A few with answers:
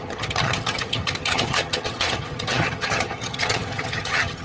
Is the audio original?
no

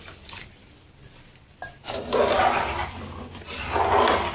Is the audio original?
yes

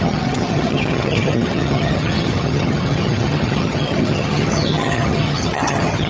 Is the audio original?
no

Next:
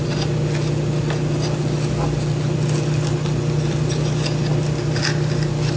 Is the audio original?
yes